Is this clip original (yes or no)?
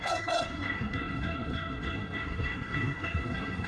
no